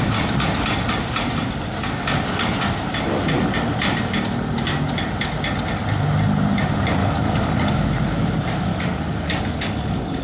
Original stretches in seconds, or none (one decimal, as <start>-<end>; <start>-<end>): 0.0-7.0; 7.9-8.7